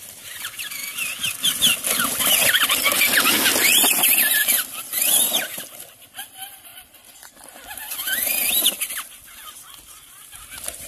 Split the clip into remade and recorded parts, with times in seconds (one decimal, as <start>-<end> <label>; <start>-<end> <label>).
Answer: 0.0-10.9 recorded